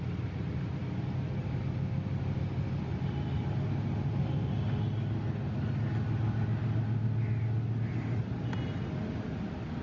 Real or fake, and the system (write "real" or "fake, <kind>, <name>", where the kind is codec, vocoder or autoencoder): real